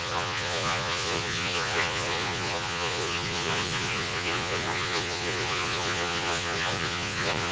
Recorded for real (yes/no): no